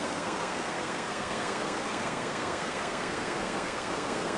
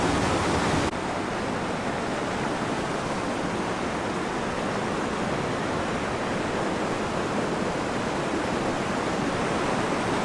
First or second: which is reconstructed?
first